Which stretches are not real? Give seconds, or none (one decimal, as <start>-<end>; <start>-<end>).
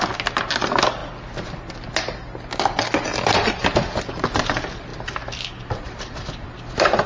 3.1-3.6